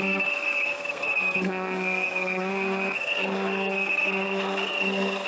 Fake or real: fake